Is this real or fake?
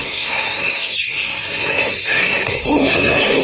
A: fake